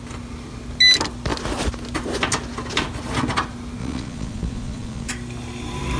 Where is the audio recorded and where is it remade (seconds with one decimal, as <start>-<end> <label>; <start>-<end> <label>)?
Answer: 0.0-3.8 recorded; 3.8-5.1 remade; 5.1-6.0 recorded